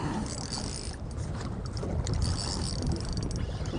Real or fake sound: real